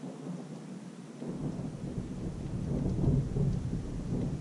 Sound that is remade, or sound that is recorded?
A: recorded